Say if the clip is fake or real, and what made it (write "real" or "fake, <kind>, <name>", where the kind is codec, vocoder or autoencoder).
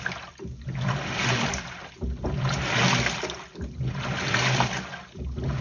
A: real